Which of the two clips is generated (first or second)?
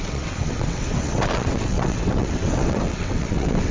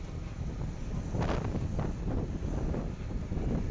first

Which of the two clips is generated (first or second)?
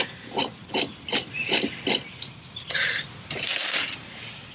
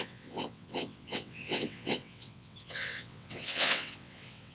second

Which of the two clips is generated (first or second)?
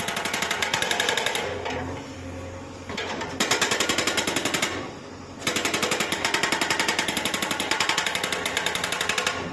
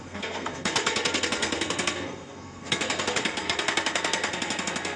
second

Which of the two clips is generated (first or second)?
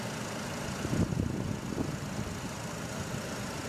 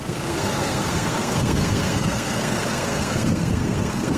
second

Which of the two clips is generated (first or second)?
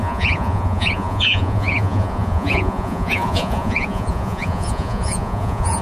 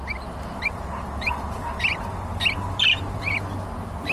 first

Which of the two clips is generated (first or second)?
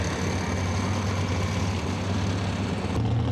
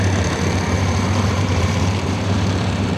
second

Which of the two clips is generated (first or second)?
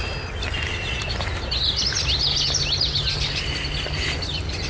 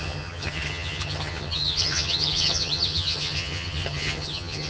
second